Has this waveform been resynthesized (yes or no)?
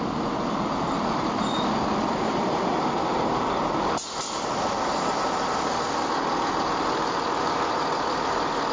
no